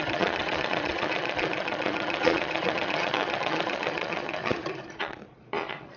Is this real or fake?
fake